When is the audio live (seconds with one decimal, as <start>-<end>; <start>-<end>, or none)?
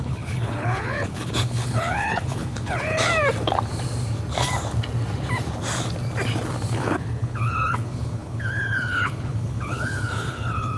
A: 3.1-6.7